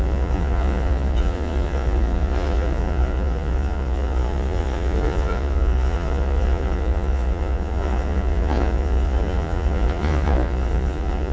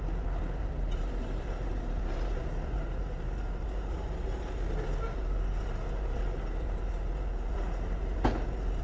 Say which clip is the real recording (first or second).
second